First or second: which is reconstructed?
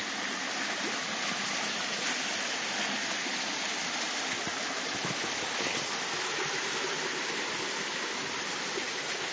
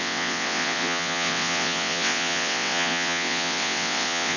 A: second